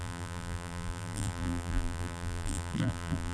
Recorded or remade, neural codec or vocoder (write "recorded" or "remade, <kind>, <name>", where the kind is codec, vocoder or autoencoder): remade, vocoder, BigVGAN v2